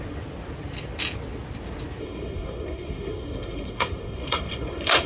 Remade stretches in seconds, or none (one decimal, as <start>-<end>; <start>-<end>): 2.0-5.1